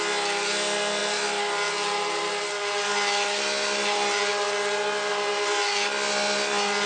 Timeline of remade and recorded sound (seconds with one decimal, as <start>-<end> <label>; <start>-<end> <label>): 0.0-6.9 recorded